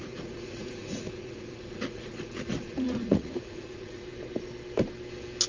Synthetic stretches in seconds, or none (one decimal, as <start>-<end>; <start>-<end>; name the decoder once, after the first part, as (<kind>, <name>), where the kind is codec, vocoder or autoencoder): 0.0-4.0 (vocoder, Vocos)